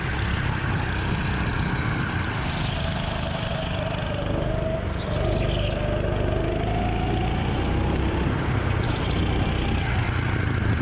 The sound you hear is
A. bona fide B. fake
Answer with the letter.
A